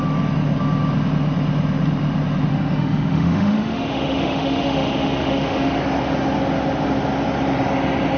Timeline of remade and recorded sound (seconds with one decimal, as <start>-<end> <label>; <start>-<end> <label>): 0.0-2.5 recorded; 2.5-5.8 remade; 5.8-8.2 recorded